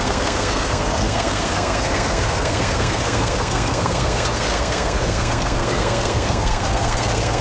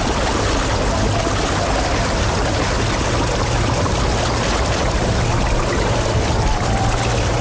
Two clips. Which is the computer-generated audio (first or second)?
first